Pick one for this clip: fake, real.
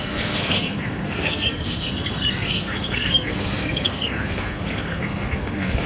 fake